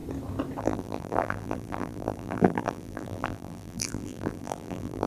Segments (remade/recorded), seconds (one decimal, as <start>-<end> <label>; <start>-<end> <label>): 0.0-0.6 recorded; 0.6-5.1 remade